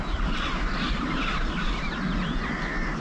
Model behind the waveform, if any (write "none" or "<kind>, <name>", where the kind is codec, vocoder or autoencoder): none